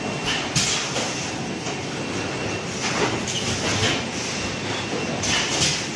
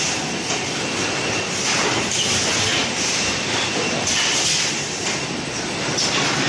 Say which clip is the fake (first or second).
second